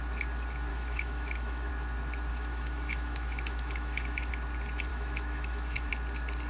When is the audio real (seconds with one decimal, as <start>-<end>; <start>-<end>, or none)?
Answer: 0.0-0.7; 1.7-2.3; 4.3-4.9; 5.9-6.5